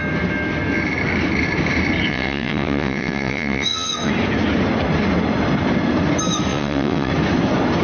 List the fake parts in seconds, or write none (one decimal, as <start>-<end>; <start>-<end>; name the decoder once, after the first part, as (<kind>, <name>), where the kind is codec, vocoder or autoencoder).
2.1-4.1 (vocoder, WaveNeXt); 6.5-7.1